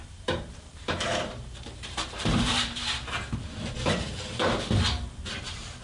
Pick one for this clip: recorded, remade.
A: remade